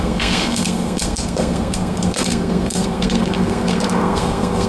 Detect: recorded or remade remade